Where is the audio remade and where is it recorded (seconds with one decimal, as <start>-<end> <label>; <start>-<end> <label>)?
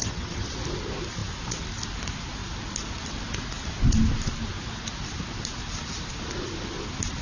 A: 0.0-0.5 remade; 0.5-7.2 recorded